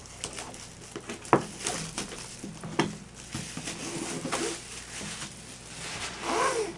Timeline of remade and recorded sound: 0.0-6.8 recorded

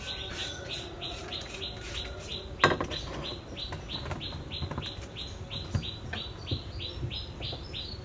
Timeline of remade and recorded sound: 0.0-0.4 recorded; 0.4-1.6 remade; 1.6-8.0 recorded